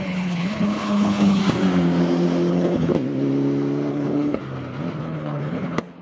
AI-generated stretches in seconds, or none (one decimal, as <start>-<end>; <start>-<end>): 0.0-1.4; 2.5-2.9; 3.9-4.4; 5.0-6.0